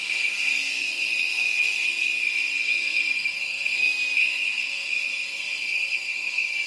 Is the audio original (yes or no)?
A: no